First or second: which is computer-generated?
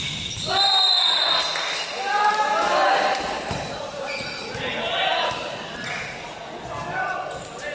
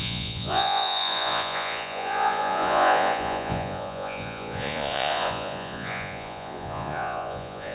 second